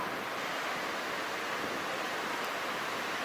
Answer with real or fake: real